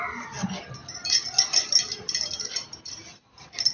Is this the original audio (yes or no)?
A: yes